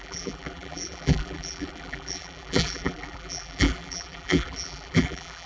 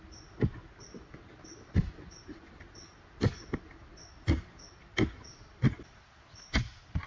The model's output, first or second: first